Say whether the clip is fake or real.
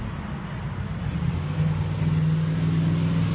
real